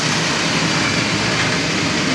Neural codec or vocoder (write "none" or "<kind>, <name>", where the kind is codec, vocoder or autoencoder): none